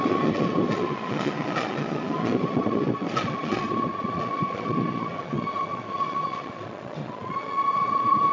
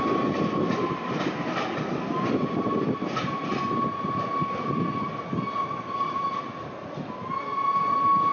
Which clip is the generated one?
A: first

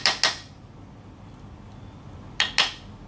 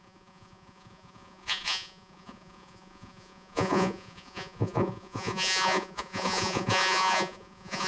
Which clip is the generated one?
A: second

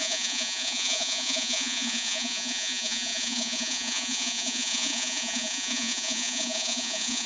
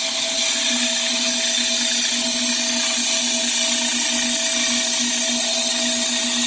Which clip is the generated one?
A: first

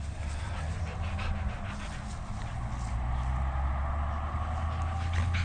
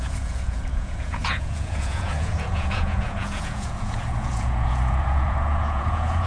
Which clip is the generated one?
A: second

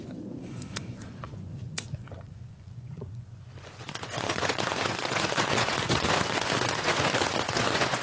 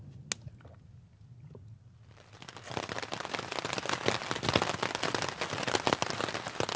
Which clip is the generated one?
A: first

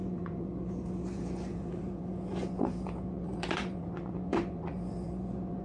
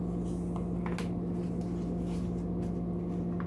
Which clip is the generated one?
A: first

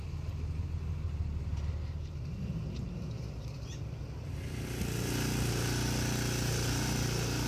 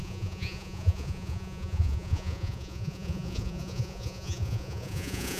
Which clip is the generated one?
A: second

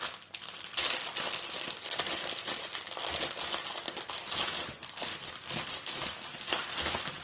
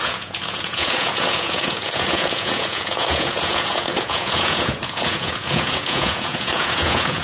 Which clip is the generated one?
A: second